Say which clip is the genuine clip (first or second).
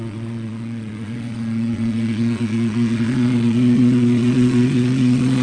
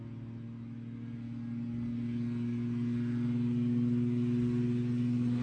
second